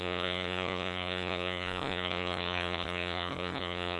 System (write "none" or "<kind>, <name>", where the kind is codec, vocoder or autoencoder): codec, SNAC